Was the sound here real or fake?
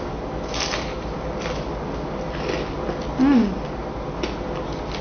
real